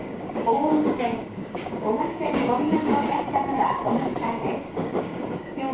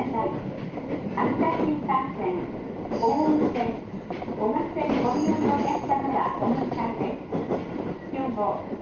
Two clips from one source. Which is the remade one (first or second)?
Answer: first